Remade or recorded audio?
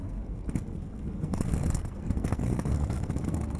remade